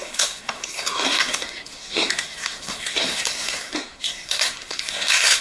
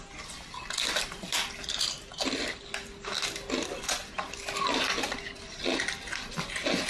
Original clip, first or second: second